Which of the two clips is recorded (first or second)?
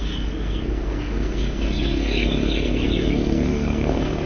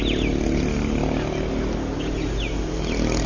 second